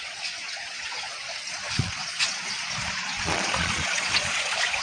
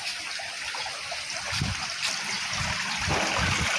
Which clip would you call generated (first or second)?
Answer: first